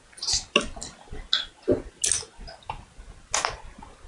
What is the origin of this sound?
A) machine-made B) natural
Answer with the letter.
B